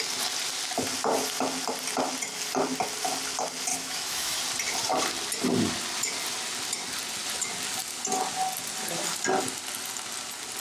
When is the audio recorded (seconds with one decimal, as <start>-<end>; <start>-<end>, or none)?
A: 0.0-3.7; 4.4-10.6